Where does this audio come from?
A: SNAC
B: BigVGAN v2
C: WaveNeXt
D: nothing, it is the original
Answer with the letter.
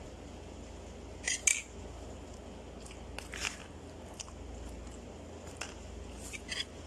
D